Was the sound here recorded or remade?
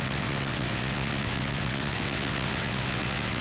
remade